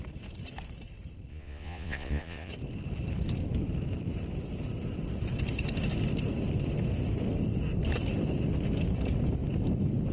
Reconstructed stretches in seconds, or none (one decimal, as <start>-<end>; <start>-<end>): 1.3-2.5